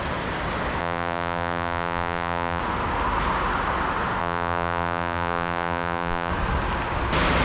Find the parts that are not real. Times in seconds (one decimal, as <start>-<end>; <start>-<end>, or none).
0.8-2.6; 4.2-6.3